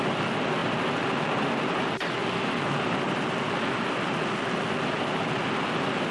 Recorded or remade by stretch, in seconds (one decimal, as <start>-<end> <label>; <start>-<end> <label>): 0.0-6.1 recorded